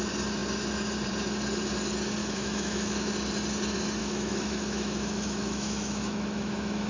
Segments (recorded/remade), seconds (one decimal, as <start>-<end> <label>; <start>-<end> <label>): 0.0-2.2 recorded; 2.2-3.1 remade; 3.1-4.0 recorded; 4.0-6.9 remade